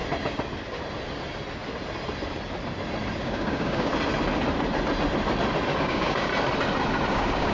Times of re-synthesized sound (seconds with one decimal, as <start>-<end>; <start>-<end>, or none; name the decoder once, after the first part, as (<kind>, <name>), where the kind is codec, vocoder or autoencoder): 3.2-3.9 (codec, DAC); 5.8-6.3; 7.1-7.5